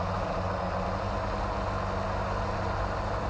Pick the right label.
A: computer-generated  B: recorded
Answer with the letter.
B